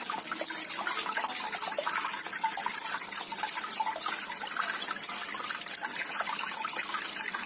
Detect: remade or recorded recorded